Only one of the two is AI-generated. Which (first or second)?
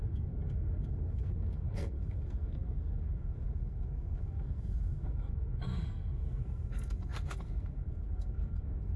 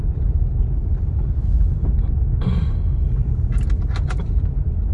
first